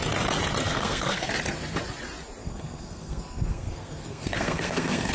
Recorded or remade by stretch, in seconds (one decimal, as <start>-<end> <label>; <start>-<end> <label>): 0.0-0.6 recorded; 0.6-1.3 remade; 1.3-2.4 recorded; 2.4-5.1 remade